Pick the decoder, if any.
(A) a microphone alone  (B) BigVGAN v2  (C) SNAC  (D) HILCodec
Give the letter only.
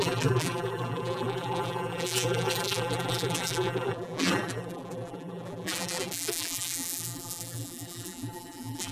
B